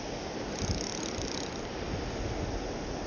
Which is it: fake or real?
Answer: real